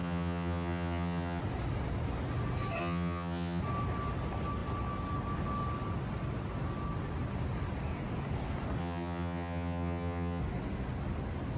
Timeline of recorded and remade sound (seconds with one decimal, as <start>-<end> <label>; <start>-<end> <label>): 0.0-1.4 remade; 1.4-2.8 recorded; 2.8-3.6 remade; 3.6-8.8 recorded; 8.8-10.4 remade; 10.4-11.6 recorded